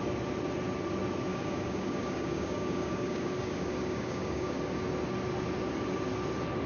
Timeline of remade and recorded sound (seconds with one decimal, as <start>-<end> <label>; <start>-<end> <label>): 0.0-1.3 recorded; 1.3-4.6 remade; 4.6-6.7 recorded